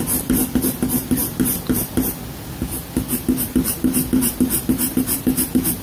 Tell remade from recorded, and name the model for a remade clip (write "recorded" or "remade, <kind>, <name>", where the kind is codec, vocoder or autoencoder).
recorded